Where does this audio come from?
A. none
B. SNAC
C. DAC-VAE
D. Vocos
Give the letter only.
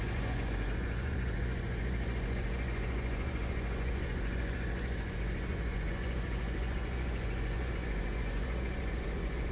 D